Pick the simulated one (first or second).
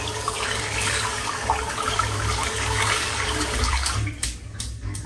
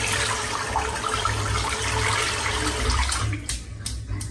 first